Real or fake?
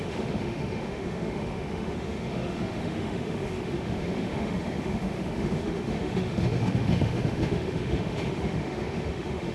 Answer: fake